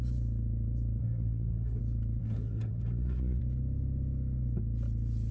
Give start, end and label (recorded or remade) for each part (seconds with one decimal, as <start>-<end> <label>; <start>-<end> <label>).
0.0-1.0 recorded; 1.0-1.8 remade; 1.8-2.2 recorded; 2.2-3.4 remade; 3.4-5.3 recorded